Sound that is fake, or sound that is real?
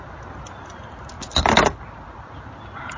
real